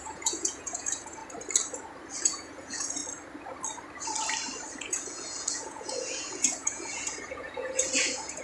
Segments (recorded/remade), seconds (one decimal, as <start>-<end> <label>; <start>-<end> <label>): 0.0-1.2 remade; 1.2-2.2 recorded; 2.2-3.0 remade; 3.0-4.8 recorded; 4.8-8.4 remade